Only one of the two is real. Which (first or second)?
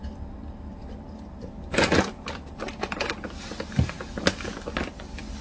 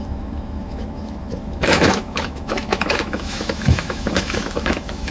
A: first